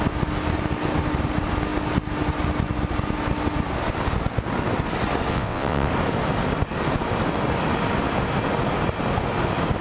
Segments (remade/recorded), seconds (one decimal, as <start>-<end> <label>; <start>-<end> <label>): 0.0-5.3 recorded; 5.3-5.9 remade; 5.9-9.8 recorded